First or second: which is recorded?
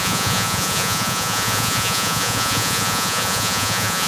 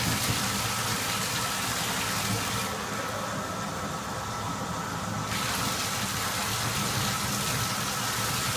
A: second